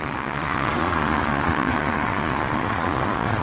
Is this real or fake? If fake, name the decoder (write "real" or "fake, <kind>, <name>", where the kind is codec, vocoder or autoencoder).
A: fake, vocoder, Vocos